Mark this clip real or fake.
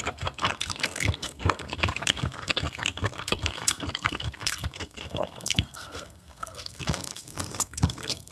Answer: fake